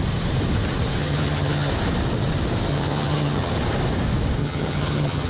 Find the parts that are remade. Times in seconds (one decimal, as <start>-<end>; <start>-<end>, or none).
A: 1.0-1.7; 2.7-3.5; 4.4-5.3